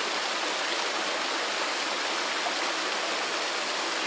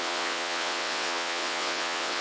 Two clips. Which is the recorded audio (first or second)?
first